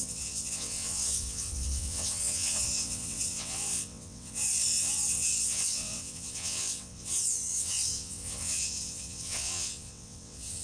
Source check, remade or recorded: remade